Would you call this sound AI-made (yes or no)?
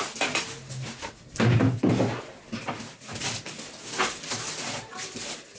no